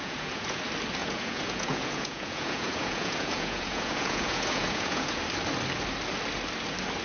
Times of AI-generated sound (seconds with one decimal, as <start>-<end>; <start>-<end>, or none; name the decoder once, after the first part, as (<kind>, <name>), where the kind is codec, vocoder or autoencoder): 0.0-0.6 (vocoder, Vocos); 1.0-5.2